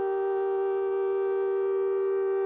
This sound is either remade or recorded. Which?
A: recorded